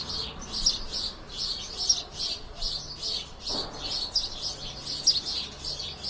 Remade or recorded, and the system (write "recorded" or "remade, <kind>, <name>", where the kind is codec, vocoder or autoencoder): recorded